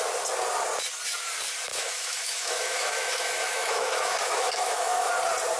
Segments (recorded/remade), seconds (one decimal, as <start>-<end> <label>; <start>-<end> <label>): 0.0-1.7 recorded; 1.7-5.1 remade; 5.1-5.6 recorded